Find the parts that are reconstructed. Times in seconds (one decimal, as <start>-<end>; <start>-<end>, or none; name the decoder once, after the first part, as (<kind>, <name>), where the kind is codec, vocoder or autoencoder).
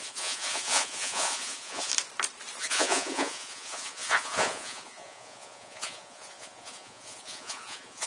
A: 0.0-1.9 (vocoder, Vocos); 2.6-8.1